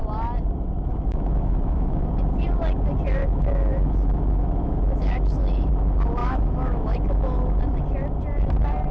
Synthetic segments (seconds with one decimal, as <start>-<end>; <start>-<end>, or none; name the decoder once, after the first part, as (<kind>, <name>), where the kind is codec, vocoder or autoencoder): 0.9-2.1 (autoencoder, DAC-VAE); 3.2-5.7; 6.2-7.6